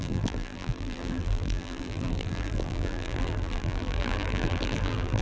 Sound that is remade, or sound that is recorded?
remade